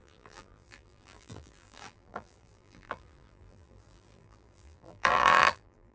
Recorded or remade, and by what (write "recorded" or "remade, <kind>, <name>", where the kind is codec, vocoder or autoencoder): remade, vocoder, BigVGAN v2